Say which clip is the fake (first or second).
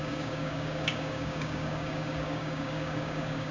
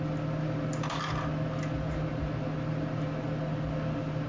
first